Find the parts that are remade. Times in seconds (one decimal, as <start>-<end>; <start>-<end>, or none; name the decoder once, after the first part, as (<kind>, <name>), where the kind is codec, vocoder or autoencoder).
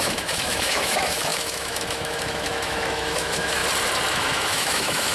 0.0-3.6 (autoencoder, DAC-VAE); 4.1-5.1